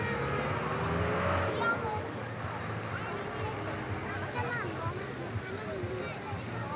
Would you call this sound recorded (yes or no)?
yes